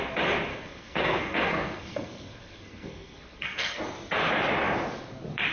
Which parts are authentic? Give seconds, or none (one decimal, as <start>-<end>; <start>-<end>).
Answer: 0.0-0.5; 3.8-5.5